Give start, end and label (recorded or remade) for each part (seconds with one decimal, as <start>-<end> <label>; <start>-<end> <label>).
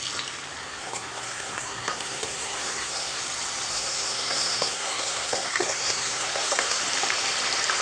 0.0-0.6 recorded; 0.6-3.2 remade; 3.2-3.7 recorded; 3.7-6.8 remade; 6.8-7.8 recorded